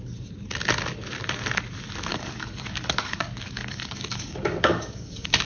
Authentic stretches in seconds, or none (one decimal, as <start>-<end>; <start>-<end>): 0.0-2.1